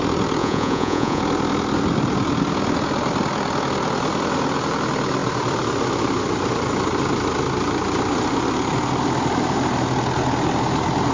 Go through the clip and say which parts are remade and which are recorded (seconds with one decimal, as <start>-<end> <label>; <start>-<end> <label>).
0.0-0.4 recorded; 0.4-1.2 remade; 1.2-11.1 recorded